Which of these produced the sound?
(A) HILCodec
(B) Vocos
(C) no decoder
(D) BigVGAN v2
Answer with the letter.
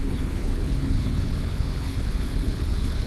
A